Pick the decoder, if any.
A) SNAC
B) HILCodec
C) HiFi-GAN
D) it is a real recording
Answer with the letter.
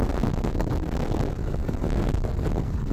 A